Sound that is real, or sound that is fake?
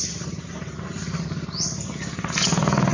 real